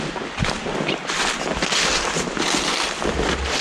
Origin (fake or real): fake